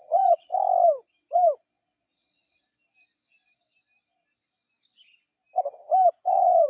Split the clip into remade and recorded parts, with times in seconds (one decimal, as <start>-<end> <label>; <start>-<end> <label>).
0.0-0.5 remade; 0.5-2.0 recorded; 2.0-2.7 remade; 2.7-6.3 recorded; 6.3-6.7 remade